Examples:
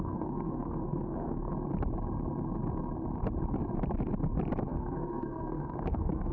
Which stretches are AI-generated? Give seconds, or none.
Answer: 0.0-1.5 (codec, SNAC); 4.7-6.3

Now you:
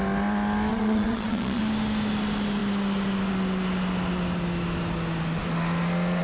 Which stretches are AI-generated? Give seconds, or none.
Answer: 0.7-1.6 (vocoder, Vocos)

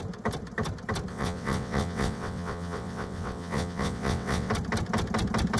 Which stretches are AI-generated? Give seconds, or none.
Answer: 1.1-4.5 (vocoder, WaveNeXt)

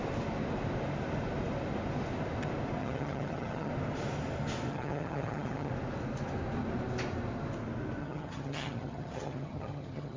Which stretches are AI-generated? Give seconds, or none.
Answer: 2.8-3.7 (vocoder, HiFi-GAN); 4.7-5.7; 8.0-10.2

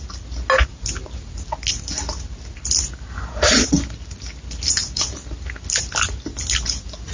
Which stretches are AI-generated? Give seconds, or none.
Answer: none

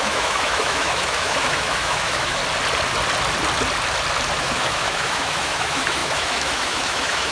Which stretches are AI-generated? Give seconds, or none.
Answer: 0.0-2.4 (autoencoder, DAC-VAE); 4.4-7.3

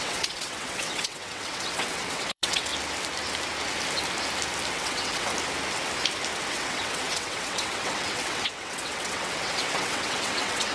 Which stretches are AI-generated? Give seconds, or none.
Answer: 0.0-2.7 (vocoder, WaveNeXt); 4.7-5.3; 6.5-10.7

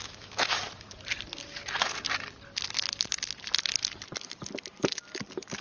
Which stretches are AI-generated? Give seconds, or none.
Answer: 0.0-0.6 (autoencoder, DAC-VAE)